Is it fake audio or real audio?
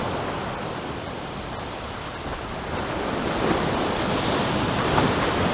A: real